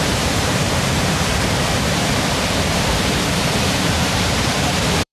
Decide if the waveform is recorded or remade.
remade